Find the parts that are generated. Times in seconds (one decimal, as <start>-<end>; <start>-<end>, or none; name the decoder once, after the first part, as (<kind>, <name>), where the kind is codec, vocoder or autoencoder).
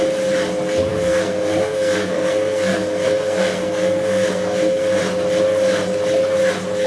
0.9-5.0 (codec, SNAC)